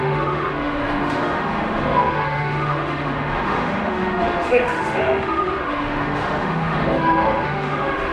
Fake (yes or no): yes